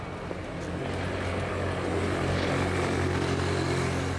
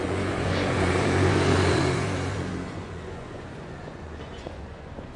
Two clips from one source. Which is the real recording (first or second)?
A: first